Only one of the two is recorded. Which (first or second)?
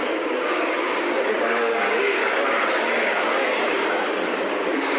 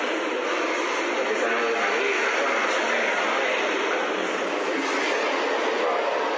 second